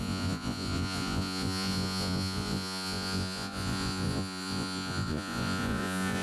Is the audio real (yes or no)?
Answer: no